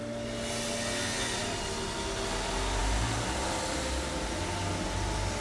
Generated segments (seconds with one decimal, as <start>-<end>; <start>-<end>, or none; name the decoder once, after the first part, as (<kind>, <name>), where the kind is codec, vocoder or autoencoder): none